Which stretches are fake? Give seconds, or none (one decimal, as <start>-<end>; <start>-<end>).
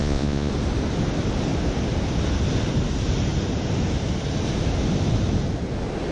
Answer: 0.0-0.5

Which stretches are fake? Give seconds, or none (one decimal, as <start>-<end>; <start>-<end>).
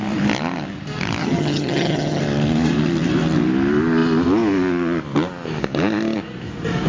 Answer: 1.2-2.2